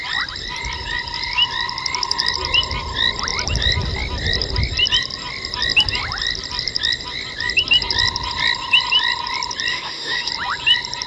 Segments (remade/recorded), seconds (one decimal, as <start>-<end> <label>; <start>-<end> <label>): 0.0-9.7 recorded; 9.7-10.3 remade; 10.3-11.1 recorded